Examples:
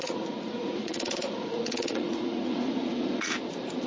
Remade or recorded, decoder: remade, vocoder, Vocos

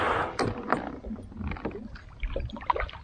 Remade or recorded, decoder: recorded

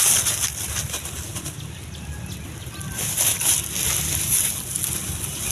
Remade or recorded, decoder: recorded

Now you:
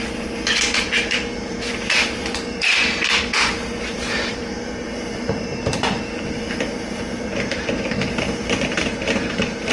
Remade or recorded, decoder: remade, vocoder, BigVGAN v2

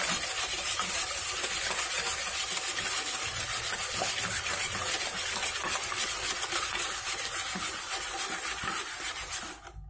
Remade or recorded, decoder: recorded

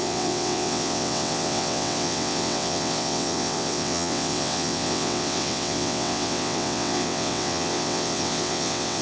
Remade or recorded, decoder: remade, vocoder, WaveNeXt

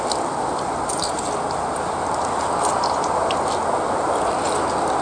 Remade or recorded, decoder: recorded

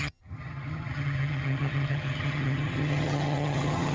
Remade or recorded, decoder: remade, vocoder, HiFi-GAN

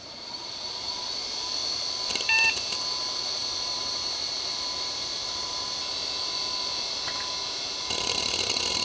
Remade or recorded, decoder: remade, vocoder, BigVGAN v2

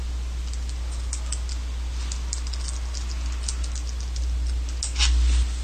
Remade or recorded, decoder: recorded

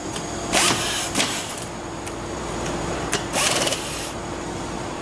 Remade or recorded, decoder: remade, vocoder, BigVGAN v2